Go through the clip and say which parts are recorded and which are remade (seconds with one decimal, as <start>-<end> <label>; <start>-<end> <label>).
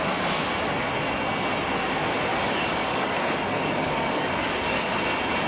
0.0-2.3 recorded; 2.3-5.0 remade; 5.0-5.5 recorded